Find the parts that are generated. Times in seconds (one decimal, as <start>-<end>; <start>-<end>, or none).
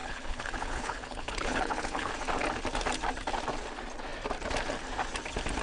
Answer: 0.0-2.1